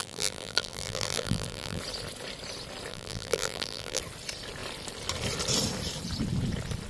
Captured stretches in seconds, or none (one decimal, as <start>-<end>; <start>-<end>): 1.8-2.9; 4.0-6.9